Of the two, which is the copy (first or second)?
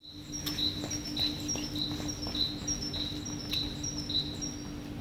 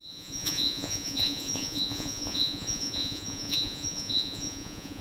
second